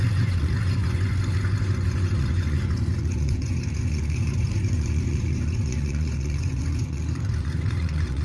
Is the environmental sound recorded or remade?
remade